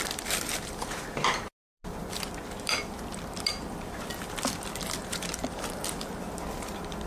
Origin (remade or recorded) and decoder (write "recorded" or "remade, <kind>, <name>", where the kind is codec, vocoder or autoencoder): remade, vocoder, BigVGAN v2